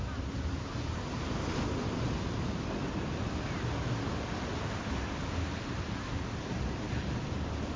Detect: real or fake real